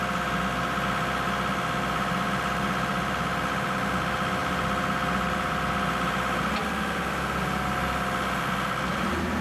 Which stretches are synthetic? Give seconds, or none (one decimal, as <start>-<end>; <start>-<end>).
none